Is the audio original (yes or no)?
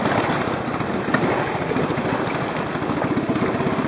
yes